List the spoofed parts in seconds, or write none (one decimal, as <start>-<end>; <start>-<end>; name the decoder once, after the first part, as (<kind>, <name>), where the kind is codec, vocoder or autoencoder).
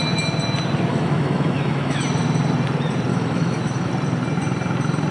0.9-2.0 (autoencoder, DAC-VAE); 3.1-3.9